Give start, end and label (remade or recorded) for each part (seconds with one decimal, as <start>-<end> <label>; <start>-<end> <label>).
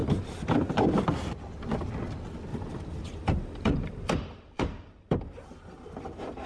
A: 0.0-1.0 remade; 1.0-2.5 recorded; 2.5-6.5 remade